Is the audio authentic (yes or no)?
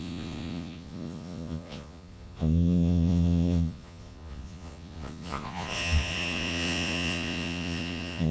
no